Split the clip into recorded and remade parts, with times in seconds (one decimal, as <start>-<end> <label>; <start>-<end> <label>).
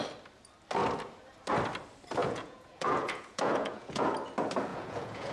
0.0-2.2 recorded; 2.2-4.1 remade; 4.1-4.7 recorded; 4.7-5.3 remade